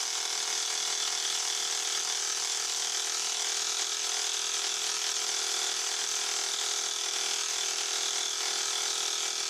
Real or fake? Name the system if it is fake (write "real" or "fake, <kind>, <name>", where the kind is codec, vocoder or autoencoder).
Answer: real